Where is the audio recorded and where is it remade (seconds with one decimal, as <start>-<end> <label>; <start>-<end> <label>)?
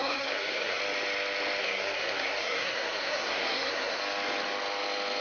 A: 0.0-0.8 remade; 0.8-1.6 recorded; 1.6-4.0 remade; 4.0-5.2 recorded